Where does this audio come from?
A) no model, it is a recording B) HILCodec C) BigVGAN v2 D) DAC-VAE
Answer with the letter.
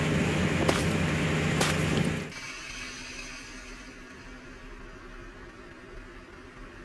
A